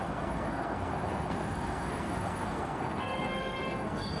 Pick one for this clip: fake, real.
fake